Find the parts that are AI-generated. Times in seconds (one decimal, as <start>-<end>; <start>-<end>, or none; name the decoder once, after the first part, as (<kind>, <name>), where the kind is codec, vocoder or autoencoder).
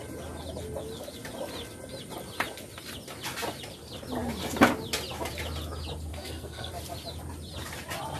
6.1-6.7 (codec, SNAC)